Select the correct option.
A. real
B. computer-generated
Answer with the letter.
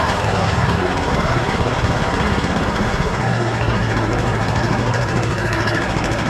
B